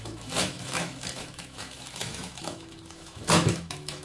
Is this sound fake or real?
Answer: fake